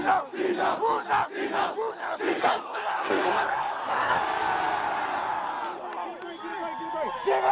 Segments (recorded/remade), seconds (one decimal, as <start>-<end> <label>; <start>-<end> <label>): 0.0-2.3 recorded; 2.3-4.2 remade; 4.2-7.5 recorded